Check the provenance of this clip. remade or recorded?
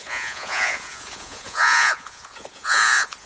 remade